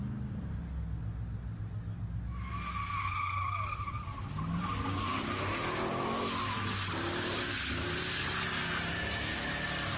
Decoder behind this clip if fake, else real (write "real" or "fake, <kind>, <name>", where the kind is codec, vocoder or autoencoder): real